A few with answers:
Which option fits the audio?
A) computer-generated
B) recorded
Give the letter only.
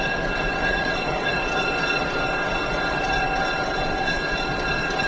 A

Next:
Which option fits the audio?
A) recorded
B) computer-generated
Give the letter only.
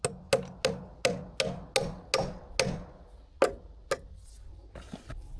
A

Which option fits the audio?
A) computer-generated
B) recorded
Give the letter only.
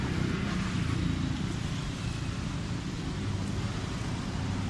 B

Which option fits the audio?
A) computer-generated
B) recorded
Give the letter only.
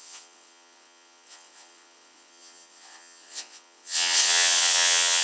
A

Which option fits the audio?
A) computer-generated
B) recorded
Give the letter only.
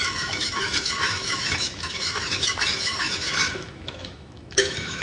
A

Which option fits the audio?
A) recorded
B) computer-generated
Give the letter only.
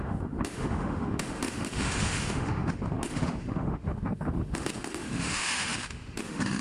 B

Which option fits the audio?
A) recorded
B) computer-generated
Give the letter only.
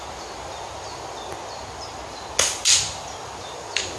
A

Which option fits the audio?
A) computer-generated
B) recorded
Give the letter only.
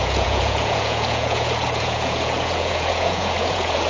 A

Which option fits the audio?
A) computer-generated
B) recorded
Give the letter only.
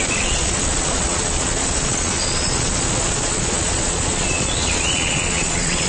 A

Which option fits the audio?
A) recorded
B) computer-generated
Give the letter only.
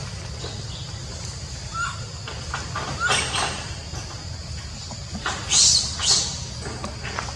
A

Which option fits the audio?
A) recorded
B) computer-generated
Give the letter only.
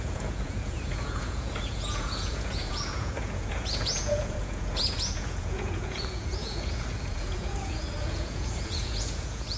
B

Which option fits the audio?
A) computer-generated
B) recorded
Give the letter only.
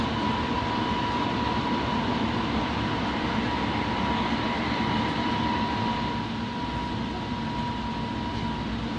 B